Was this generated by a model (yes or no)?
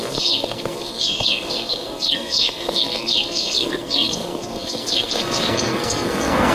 yes